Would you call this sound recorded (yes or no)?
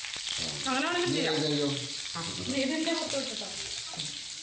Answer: yes